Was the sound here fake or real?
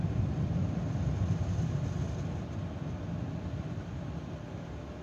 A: real